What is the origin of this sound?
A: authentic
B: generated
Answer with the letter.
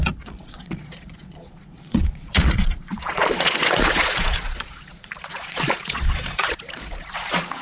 B